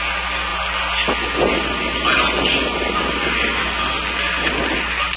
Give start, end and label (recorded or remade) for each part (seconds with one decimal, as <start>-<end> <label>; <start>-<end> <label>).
0.0-5.2 recorded